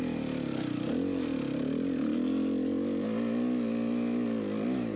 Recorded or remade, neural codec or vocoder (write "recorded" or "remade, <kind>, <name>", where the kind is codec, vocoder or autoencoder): recorded